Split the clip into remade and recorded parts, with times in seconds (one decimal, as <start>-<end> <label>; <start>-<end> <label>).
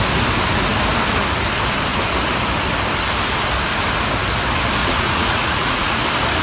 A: 0.0-4.8 recorded; 4.8-6.0 remade; 6.0-6.4 recorded